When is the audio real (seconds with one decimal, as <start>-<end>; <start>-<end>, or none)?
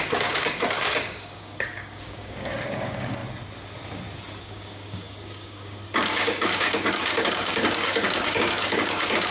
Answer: 3.2-4.4